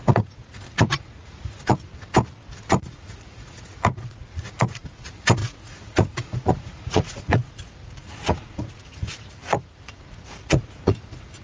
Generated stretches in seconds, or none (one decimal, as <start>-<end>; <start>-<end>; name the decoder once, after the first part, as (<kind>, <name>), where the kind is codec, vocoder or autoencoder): 0.0-1.9 (vocoder, Vocos); 2.7-11.4